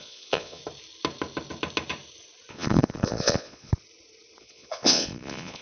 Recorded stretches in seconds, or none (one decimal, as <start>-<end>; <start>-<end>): 0.6-2.5; 3.7-4.4